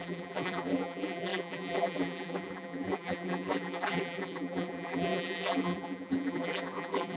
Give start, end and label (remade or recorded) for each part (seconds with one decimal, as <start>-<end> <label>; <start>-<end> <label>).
0.0-7.2 remade